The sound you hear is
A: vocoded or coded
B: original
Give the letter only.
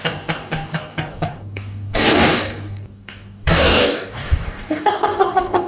A